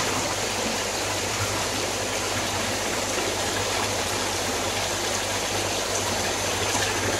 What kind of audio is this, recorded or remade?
recorded